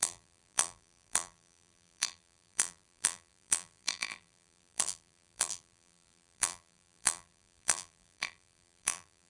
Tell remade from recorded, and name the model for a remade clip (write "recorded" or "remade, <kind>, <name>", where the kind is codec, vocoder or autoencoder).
remade, vocoder, BigVGAN v2